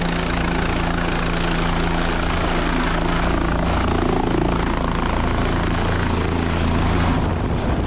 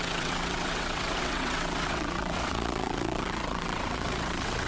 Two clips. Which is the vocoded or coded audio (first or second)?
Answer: second